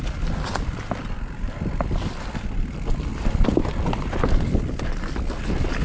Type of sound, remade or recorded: recorded